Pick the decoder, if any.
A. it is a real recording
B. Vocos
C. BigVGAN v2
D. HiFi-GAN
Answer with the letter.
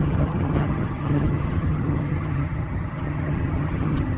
D